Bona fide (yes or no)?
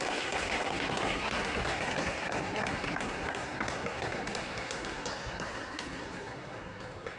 no